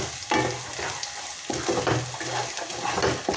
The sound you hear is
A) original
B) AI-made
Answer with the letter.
A